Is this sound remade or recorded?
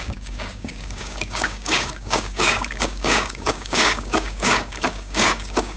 remade